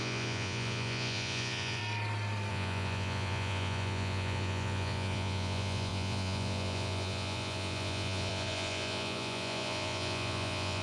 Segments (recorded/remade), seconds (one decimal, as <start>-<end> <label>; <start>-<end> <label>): 0.0-1.8 remade; 1.8-2.5 recorded; 2.5-10.8 remade